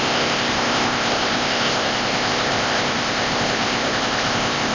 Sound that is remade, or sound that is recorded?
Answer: remade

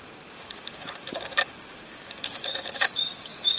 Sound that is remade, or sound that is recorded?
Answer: remade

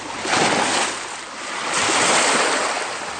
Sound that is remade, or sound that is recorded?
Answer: recorded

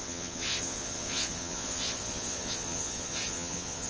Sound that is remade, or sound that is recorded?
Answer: remade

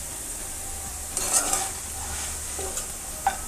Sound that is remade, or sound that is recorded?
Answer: recorded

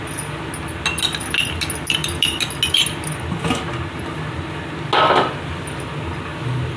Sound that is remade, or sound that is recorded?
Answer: recorded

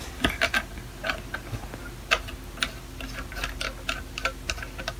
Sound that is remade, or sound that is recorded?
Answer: recorded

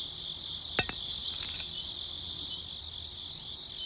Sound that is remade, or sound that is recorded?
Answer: recorded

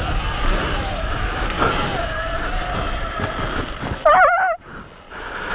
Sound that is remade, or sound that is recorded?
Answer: remade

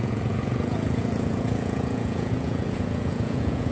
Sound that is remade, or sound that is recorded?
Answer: remade